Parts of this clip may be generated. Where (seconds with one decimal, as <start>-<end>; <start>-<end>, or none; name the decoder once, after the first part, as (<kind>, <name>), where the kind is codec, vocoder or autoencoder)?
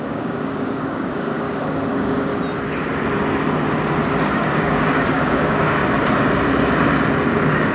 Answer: 0.0-2.3 (codec, DAC); 4.3-5.8; 7.3-7.7